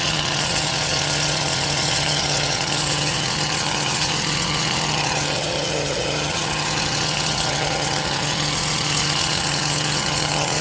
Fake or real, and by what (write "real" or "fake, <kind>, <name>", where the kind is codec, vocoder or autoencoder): fake, vocoder, HiFi-GAN